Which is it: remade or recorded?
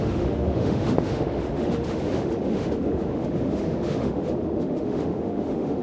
remade